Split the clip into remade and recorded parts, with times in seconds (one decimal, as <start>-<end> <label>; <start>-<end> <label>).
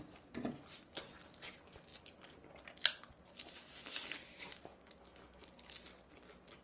0.0-6.6 recorded